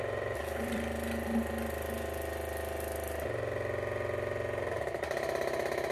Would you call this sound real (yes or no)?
no